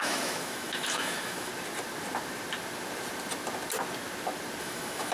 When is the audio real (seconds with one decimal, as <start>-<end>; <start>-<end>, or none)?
1.5-4.6